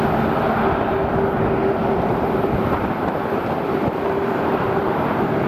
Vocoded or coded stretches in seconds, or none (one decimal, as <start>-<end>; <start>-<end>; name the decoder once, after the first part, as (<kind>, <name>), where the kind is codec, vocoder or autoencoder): 1.8-5.1 (vocoder, BigVGAN v2)